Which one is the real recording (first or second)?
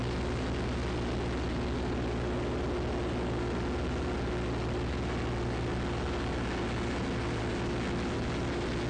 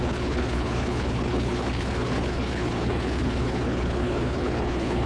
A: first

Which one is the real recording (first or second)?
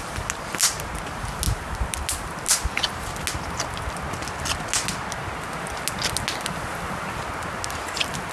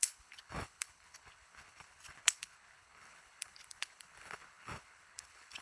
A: first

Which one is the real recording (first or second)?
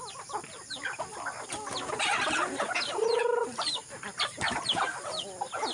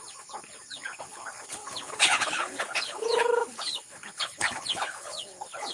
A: first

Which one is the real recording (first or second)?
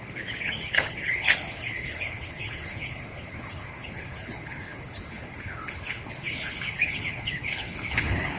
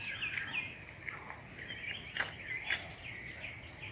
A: second